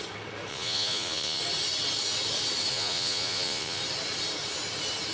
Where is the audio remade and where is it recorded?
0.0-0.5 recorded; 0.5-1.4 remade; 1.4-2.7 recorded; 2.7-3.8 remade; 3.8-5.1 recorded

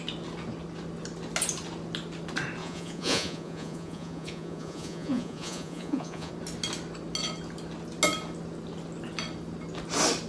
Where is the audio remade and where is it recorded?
0.0-2.6 recorded; 2.6-6.3 remade; 6.3-10.3 recorded